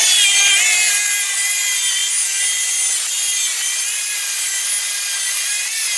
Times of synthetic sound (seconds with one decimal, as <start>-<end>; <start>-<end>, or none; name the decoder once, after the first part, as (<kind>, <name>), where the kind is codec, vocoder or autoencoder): none